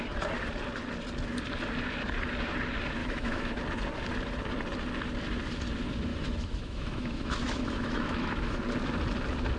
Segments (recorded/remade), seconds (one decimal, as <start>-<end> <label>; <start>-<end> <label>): 0.0-3.0 recorded; 3.0-3.5 remade; 3.5-6.1 recorded; 6.1-8.6 remade; 8.6-9.6 recorded

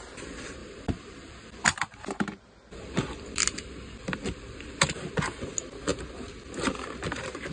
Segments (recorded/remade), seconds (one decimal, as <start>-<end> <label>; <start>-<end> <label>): 0.0-0.6 recorded; 0.6-5.1 remade; 5.1-7.5 recorded

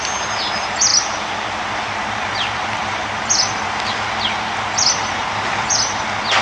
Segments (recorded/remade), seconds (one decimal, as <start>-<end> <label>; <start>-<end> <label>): 0.0-6.4 remade

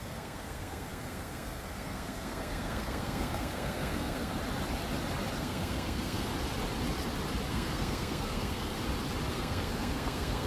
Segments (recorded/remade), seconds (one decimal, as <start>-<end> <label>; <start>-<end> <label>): 0.0-4.3 remade; 4.3-5.4 recorded; 5.4-6.3 remade; 6.3-7.5 recorded; 7.5-8.7 remade; 8.7-9.3 recorded; 9.3-10.5 remade

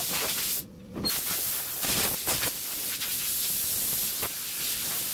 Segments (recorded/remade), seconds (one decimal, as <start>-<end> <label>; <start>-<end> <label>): 0.0-5.1 remade

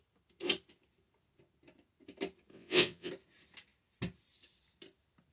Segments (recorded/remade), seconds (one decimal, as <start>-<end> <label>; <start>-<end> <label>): 0.0-2.5 recorded; 2.5-3.1 remade; 3.1-5.3 recorded

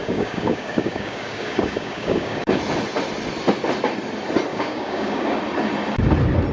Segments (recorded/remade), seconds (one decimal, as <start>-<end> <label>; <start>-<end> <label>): 0.0-2.6 remade; 2.6-4.5 recorded; 4.5-5.4 remade; 5.4-6.5 recorded